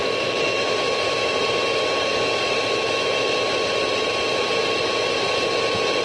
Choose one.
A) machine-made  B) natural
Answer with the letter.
B